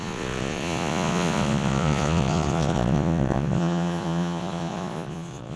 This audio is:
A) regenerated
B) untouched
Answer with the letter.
A